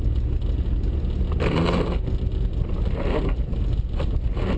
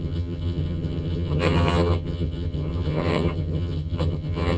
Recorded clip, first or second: first